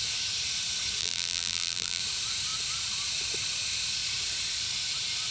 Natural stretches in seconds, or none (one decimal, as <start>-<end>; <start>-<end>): 0.0-1.0; 2.0-5.3